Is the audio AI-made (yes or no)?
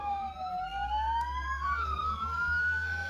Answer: yes